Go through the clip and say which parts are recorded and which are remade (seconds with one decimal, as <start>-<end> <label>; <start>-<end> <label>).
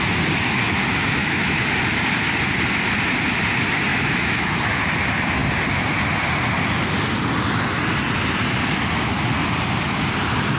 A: 0.0-1.2 recorded; 1.2-1.7 remade; 1.7-3.9 recorded; 3.9-4.6 remade; 4.6-10.6 recorded